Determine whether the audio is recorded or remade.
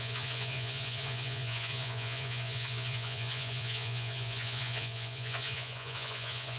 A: remade